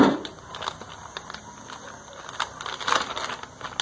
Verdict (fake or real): real